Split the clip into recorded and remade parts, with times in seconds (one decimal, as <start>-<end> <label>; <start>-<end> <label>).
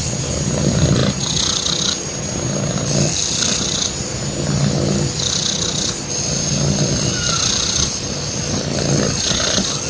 0.0-9.9 recorded